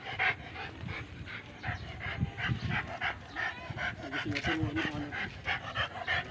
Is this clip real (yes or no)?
yes